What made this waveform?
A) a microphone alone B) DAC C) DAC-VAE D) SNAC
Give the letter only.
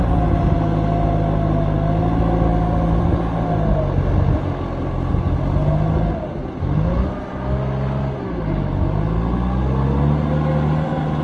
A